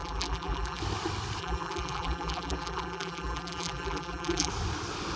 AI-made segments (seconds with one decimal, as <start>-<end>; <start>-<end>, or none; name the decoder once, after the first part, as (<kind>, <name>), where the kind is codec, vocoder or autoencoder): 0.0-0.8 (vocoder, BigVGAN v2); 1.4-4.5